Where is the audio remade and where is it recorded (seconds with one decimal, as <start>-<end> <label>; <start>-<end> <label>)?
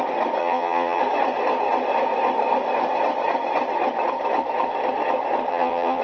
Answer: 0.0-0.4 recorded; 0.4-1.0 remade; 1.0-5.5 recorded; 5.5-6.0 remade